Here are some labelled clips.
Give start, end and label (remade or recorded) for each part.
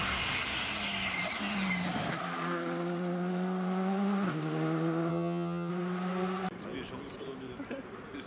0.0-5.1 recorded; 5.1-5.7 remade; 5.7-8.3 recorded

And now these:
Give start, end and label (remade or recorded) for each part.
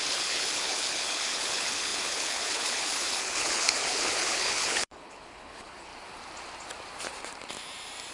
0.0-5.9 remade; 5.9-8.1 recorded